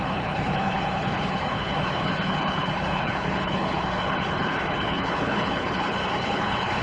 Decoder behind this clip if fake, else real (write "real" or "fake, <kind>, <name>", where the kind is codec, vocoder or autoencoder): fake, codec, HILCodec